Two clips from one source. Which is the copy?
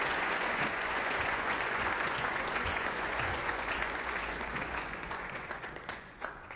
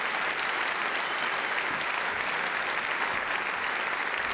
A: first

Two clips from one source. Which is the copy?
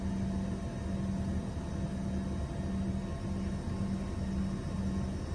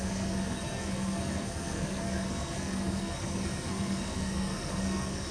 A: second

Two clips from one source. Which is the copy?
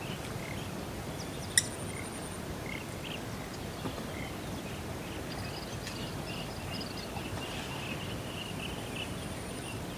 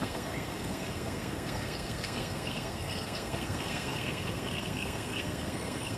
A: second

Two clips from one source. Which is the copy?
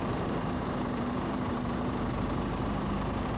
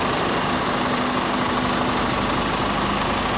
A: first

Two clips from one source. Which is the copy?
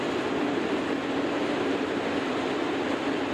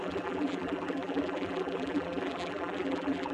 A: second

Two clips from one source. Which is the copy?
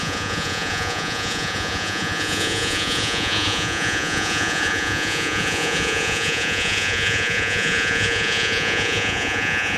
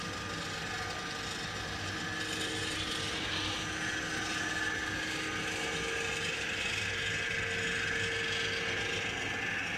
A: first